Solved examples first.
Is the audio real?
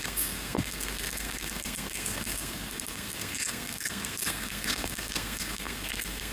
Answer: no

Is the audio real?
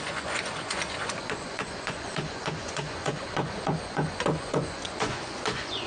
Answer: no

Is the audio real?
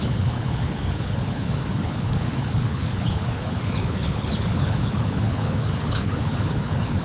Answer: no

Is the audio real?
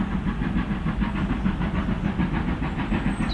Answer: yes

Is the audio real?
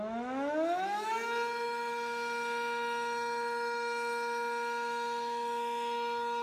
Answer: no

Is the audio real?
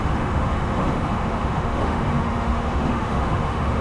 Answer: no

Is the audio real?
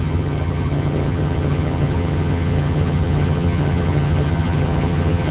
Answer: no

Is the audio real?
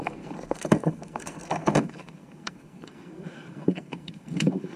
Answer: no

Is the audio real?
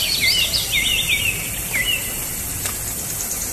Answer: yes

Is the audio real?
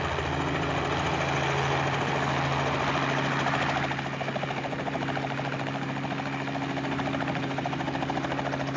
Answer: yes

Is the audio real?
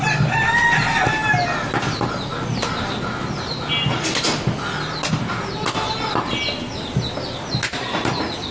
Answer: yes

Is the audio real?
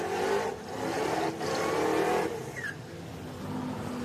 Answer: yes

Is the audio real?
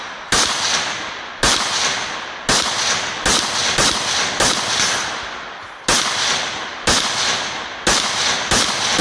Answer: yes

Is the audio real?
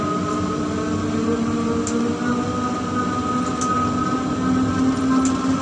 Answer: yes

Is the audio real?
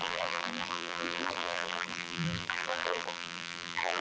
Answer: no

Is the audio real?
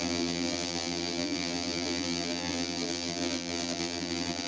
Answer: no